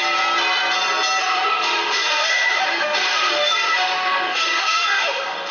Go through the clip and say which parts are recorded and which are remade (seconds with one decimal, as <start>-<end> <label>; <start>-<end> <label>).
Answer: 0.0-1.2 recorded; 1.2-5.5 remade